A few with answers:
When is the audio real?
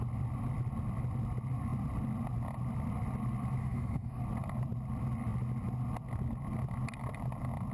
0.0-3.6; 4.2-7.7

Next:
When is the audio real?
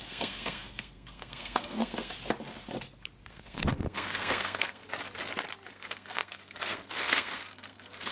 2.1-3.3; 4.8-5.7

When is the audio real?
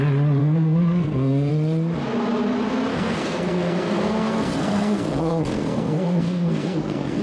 0.0-0.4; 1.5-2.9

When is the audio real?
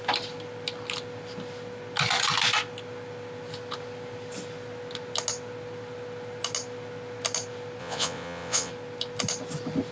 0.0-7.8; 8.7-9.9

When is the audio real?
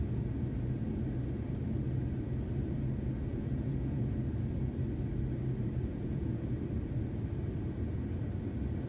0.0-3.3; 4.0-5.9; 6.5-8.9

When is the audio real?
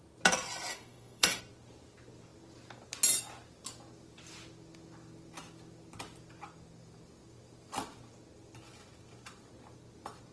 0.0-0.7; 1.4-10.3